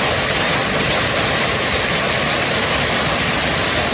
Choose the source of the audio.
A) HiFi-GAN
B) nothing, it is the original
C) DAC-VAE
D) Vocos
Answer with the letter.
B